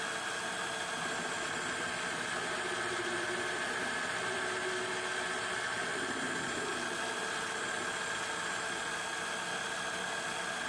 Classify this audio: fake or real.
real